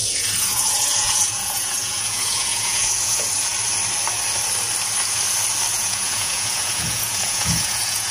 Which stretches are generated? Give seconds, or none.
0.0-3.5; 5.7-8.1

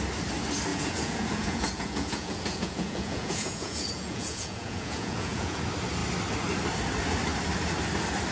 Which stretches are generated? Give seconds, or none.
0.7-5.6

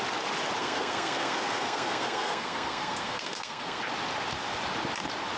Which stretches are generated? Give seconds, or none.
0.6-3.8